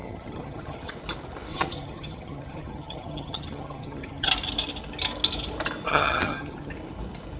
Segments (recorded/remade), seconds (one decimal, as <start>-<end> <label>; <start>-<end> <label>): 0.0-0.9 remade; 0.9-1.5 recorded; 1.5-4.3 remade; 4.3-5.9 recorded; 5.9-6.7 remade; 6.7-7.4 recorded